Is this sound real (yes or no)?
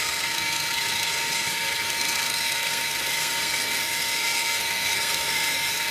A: no